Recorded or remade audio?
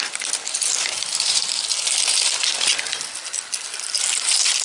recorded